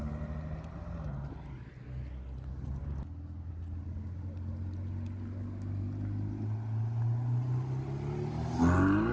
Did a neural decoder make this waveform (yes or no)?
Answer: no